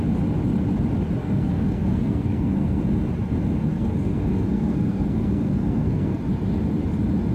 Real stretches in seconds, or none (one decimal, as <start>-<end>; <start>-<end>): 0.0-1.2; 2.8-3.7; 6.2-7.3